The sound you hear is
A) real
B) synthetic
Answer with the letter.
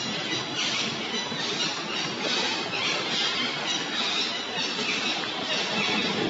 A